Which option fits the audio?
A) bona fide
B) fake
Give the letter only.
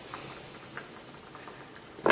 A